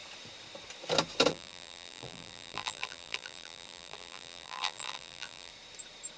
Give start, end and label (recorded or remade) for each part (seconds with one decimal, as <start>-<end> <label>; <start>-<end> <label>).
0.0-1.3 recorded; 1.3-5.5 remade; 5.5-6.2 recorded